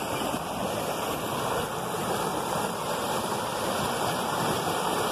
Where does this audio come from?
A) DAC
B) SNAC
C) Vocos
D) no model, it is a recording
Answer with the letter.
D